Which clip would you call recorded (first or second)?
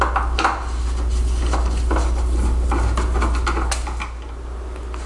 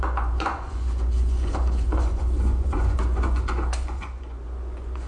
first